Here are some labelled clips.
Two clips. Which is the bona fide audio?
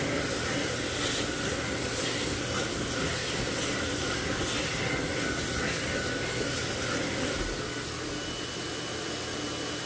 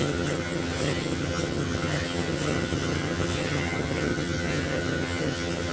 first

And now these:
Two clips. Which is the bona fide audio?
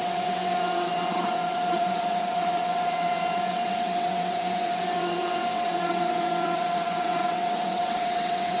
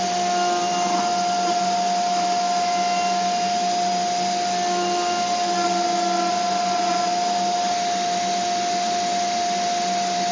second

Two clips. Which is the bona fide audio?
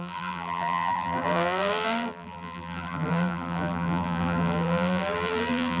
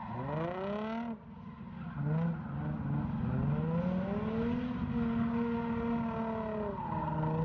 second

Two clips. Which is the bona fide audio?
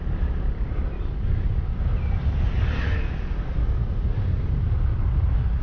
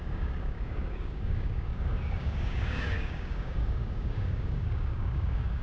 first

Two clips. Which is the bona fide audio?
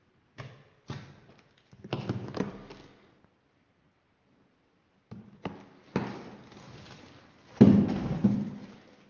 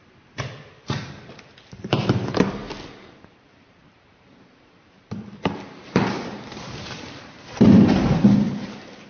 first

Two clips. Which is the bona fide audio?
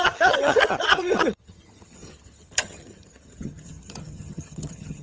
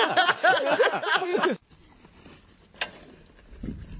second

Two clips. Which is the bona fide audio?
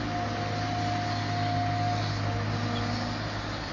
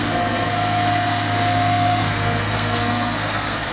first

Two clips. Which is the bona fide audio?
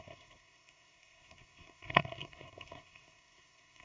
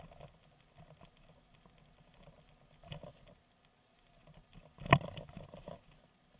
second